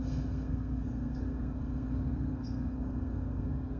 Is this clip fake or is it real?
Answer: fake